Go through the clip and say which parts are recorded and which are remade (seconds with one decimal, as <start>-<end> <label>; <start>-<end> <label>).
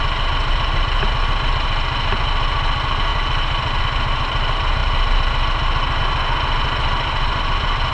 0.0-7.9 recorded